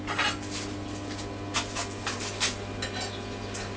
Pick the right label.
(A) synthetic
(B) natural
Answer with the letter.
B